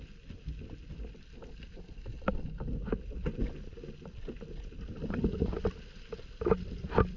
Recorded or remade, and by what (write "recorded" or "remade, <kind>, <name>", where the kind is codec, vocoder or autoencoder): recorded